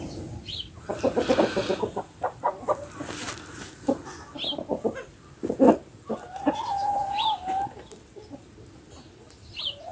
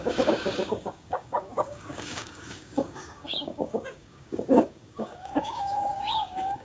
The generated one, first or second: second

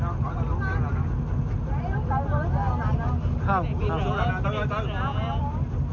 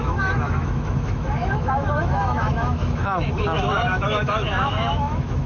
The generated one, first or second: second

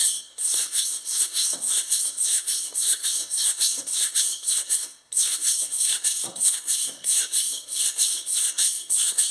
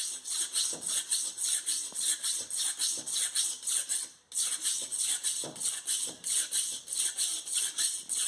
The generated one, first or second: first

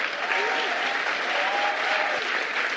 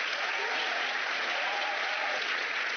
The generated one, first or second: second